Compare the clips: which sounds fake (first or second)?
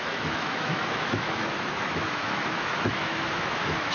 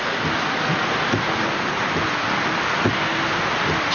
first